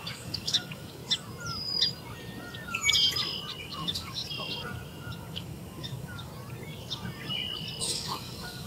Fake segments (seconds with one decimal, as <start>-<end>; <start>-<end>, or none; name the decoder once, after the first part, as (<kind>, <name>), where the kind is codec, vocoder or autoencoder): 0.0-1.0 (codec, DAC); 3.6-4.2; 5.2-6.3; 7.8-8.7